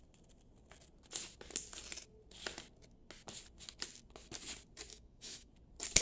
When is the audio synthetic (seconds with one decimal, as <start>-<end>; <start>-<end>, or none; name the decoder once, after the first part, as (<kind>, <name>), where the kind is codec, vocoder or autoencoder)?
4.9-5.5 (autoencoder, DAC-VAE)